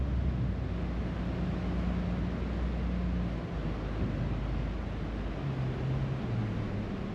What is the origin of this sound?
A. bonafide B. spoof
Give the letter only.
A